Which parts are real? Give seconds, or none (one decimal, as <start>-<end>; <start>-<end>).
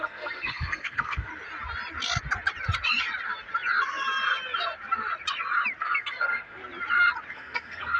1.3-5.8; 6.6-7.3